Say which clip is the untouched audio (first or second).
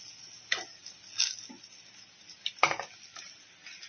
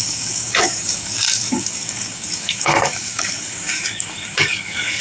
first